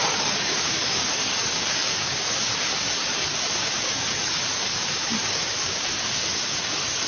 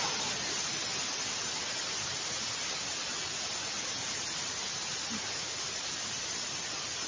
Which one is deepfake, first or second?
first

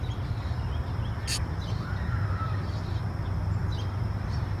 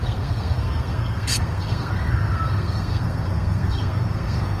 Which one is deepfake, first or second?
second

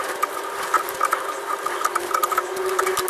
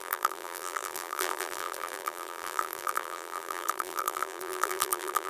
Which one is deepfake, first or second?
second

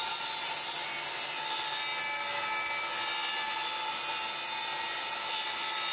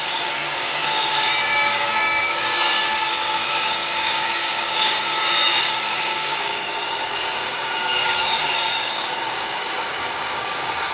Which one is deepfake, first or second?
second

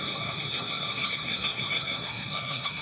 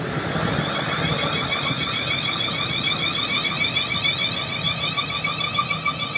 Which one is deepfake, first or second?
first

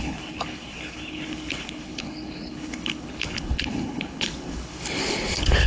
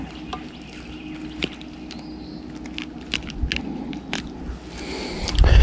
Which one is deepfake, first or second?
first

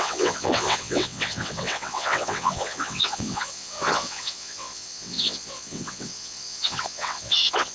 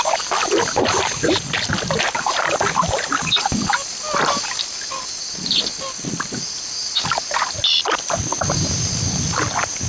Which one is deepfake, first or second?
first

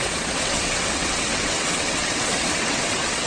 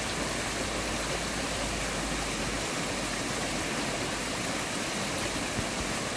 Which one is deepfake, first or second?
first